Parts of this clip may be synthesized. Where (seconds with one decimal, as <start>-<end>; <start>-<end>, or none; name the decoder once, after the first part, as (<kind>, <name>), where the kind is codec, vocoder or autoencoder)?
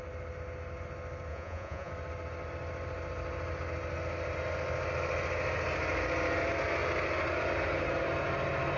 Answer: 1.3-1.9 (vocoder, Vocos)